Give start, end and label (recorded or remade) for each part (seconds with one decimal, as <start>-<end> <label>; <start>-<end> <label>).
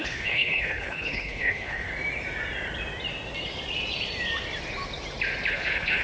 0.0-1.9 remade; 1.9-5.5 recorded; 5.5-6.0 remade